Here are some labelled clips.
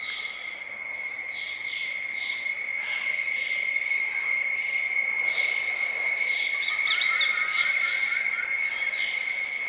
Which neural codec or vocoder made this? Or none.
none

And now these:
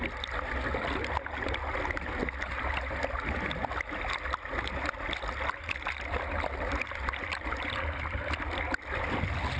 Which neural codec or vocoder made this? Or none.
none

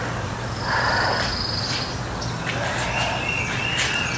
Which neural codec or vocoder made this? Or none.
none